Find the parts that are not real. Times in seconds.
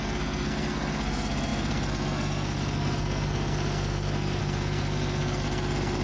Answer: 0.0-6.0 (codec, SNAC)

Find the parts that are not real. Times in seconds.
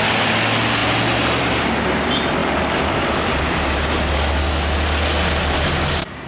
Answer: none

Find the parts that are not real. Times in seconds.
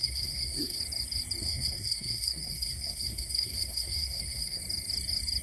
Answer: 0.0-0.8 (codec, SNAC); 1.4-4.6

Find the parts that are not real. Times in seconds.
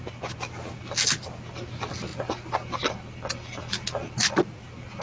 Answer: none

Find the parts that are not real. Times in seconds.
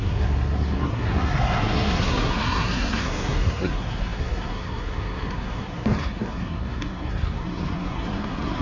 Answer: 0.0-8.6 (codec, SNAC)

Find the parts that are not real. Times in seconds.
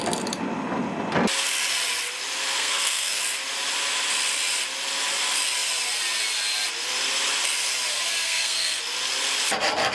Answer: 2.5-3.2 (codec, SNAC); 8.2-8.8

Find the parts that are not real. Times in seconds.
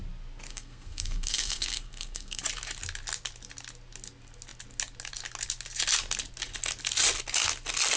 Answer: 0.5-2.4 (codec, SNAC)